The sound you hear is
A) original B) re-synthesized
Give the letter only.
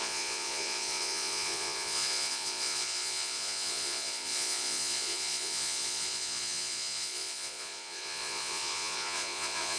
B